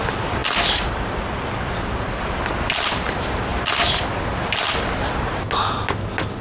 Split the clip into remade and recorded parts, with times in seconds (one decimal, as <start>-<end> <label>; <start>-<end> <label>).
0.0-6.4 recorded